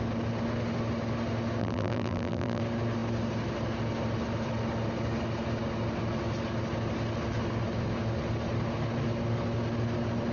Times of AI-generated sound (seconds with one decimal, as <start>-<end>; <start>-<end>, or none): 1.6-2.6